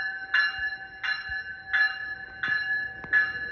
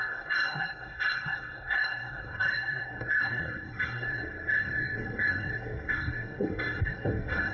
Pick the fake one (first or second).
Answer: second